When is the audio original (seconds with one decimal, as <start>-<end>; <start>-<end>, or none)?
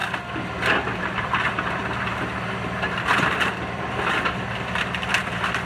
0.0-1.0; 1.8-5.2